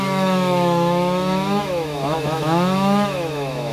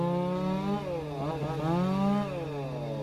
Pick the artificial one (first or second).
first